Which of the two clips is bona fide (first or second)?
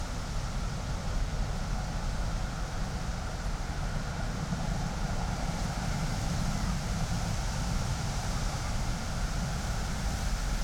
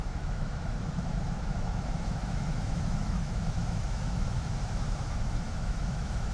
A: first